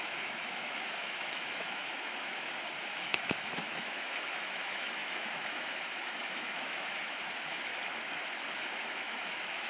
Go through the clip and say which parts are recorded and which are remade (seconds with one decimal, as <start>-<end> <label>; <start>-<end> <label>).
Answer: 0.0-7.7 remade; 7.7-8.5 recorded; 8.5-9.7 remade

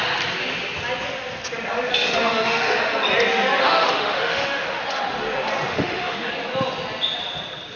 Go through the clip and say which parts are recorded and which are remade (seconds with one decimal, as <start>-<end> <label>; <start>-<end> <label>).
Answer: 0.0-1.9 recorded; 1.9-2.8 remade; 2.8-3.6 recorded; 3.6-4.8 remade; 4.8-5.7 recorded; 5.7-6.3 remade; 6.3-7.8 recorded